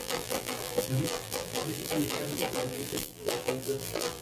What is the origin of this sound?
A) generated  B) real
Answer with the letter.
A